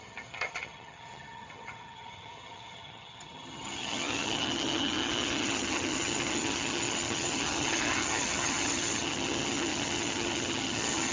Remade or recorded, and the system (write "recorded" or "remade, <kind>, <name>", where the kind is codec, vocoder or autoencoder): remade, vocoder, HiFi-GAN